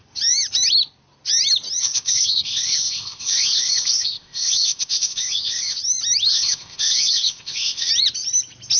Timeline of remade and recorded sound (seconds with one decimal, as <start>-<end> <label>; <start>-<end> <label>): 0.0-1.8 recorded; 1.8-5.8 remade; 5.8-6.3 recorded; 6.3-7.9 remade; 7.9-8.8 recorded